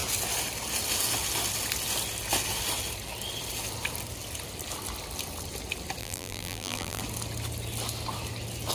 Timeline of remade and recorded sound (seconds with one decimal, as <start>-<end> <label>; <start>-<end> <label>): 0.0-6.0 recorded; 6.0-7.0 remade; 7.0-8.7 recorded